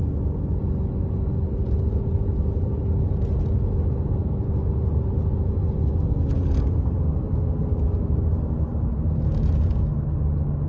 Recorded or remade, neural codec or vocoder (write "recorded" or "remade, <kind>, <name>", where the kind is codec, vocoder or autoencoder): recorded